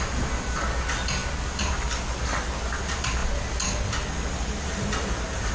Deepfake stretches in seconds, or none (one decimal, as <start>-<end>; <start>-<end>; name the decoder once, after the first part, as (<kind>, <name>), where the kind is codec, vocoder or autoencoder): none